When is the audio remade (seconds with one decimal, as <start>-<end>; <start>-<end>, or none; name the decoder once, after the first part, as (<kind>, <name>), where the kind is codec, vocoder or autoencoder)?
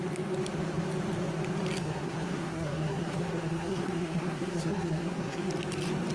1.8-5.5 (codec, SNAC)